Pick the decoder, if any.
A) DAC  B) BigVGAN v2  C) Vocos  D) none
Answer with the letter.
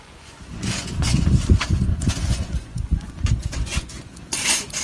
C